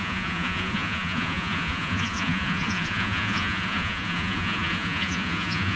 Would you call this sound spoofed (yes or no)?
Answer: yes